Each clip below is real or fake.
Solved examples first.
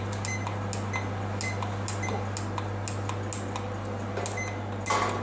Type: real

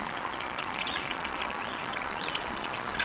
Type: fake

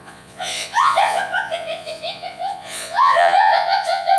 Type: fake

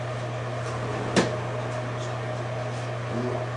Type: real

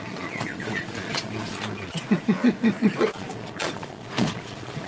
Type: fake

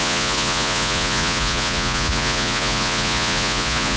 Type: fake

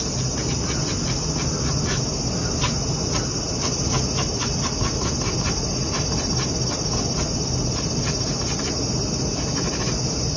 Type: real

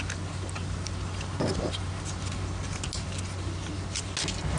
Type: real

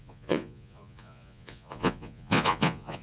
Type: fake